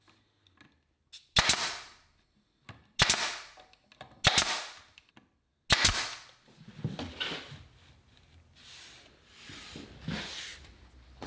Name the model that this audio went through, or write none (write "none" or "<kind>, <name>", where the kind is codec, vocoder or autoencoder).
none